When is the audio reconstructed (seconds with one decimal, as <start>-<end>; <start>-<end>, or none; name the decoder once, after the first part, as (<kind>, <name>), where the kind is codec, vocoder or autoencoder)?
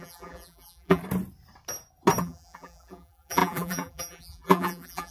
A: 0.0-1.0 (vocoder, BigVGAN v2); 2.2-5.1